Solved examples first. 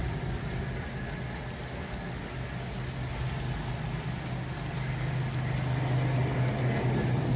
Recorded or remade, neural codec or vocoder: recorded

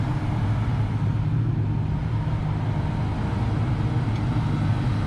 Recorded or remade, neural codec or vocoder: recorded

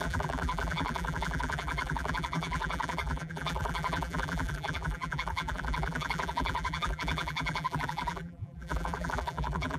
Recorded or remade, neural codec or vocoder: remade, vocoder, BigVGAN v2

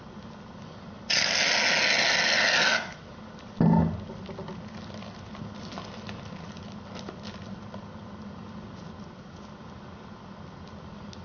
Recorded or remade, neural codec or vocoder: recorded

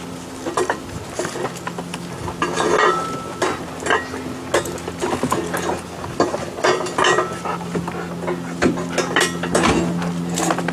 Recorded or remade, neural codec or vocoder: recorded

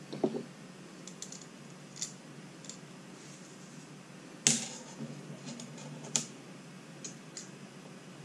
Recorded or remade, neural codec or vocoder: recorded